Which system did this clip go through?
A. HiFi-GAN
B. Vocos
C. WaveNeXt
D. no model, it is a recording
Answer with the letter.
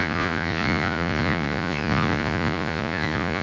B